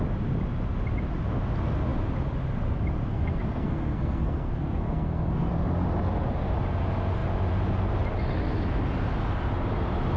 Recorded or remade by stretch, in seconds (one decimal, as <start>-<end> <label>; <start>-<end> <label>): 0.0-3.1 recorded; 3.1-5.5 remade; 5.5-10.2 recorded